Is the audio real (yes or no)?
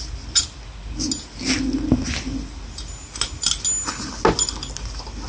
yes